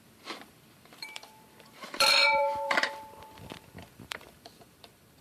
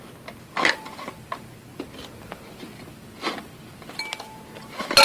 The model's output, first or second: first